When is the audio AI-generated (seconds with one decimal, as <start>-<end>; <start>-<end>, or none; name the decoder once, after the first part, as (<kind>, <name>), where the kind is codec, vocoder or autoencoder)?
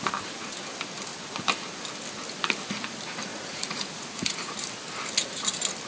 3.3-4.5 (vocoder, Vocos)